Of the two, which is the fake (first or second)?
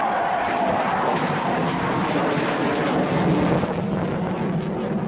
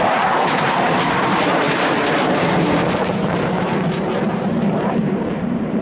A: second